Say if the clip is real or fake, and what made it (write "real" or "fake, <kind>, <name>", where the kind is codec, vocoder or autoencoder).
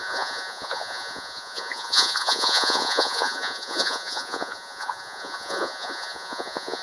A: fake, vocoder, Vocos